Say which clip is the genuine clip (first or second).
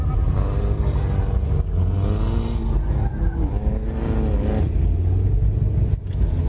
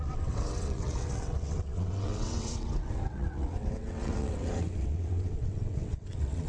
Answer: first